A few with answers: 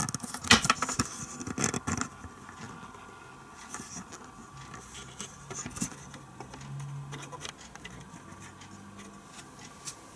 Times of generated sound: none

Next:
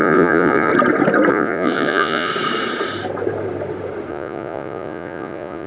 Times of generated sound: 0.0-0.7 (vocoder, Vocos); 1.3-2.3; 4.1-5.7

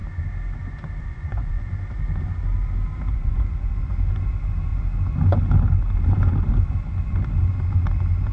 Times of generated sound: 1.0-1.7 (vocoder, Vocos); 3.1-3.9

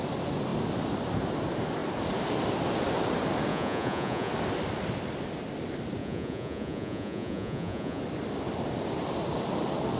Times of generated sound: 3.5-4.3 (vocoder, Vocos); 6.0-8.0

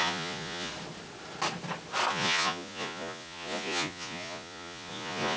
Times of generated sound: 0.0-0.7 (vocoder, Vocos); 2.1-5.4